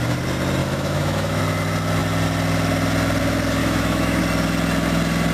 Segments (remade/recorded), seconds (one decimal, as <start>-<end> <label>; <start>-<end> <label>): 0.0-0.6 recorded; 0.6-1.4 remade; 1.4-3.6 recorded; 3.6-4.2 remade; 4.2-5.3 recorded